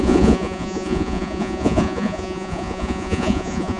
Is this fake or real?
fake